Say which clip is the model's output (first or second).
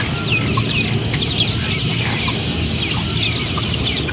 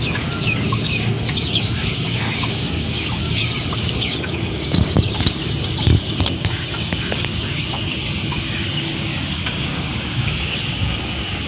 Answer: second